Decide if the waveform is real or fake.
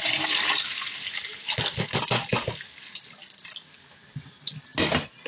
real